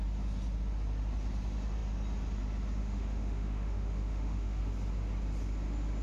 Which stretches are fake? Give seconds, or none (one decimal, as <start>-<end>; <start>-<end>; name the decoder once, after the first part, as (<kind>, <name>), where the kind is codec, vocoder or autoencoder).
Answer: 2.8-4.6 (autoencoder, DAC-VAE)